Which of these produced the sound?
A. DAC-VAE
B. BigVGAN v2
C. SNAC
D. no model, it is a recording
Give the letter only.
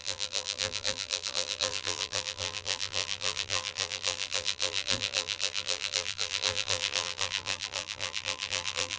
B